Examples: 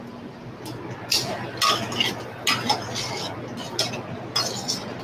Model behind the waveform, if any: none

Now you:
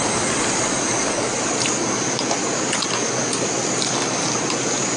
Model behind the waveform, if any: none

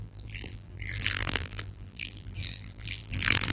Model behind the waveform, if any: vocoder, BigVGAN v2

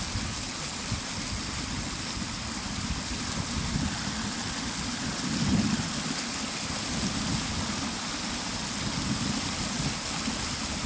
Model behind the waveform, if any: none